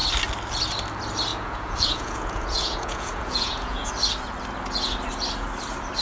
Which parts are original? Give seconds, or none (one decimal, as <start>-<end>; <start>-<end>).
0.0-1.3; 3.9-6.0

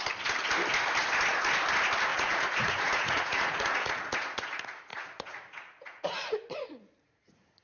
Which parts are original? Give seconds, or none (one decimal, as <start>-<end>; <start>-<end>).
0.0-2.1; 4.5-4.9